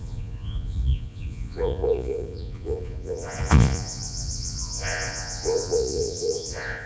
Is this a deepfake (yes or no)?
yes